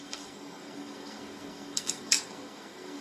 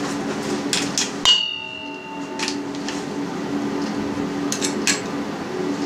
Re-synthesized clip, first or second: first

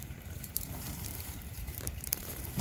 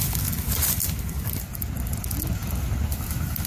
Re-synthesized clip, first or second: first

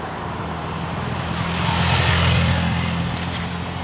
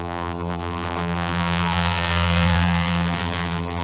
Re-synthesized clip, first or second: second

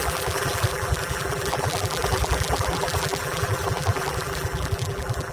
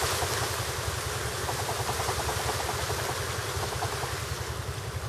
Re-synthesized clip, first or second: first